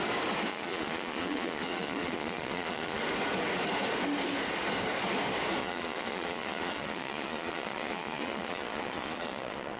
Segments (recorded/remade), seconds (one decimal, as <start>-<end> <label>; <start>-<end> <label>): 0.0-0.5 recorded; 0.5-3.0 remade; 3.0-5.6 recorded; 5.6-9.8 remade